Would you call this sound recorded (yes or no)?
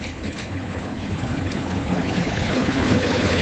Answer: no